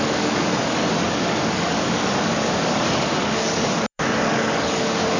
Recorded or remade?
remade